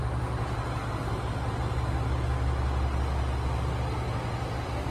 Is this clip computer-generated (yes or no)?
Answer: no